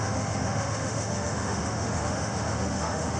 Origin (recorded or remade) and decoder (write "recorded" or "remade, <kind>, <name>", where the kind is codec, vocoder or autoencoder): remade, autoencoder, DAC-VAE